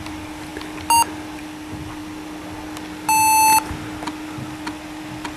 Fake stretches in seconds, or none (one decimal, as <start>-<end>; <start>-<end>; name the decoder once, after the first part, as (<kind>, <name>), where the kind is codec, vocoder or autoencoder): none